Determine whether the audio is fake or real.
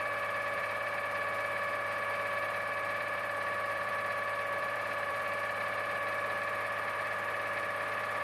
fake